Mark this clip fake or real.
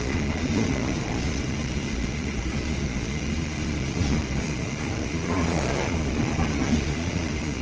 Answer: fake